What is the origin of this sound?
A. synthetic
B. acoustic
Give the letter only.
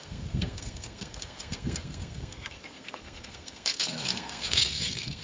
A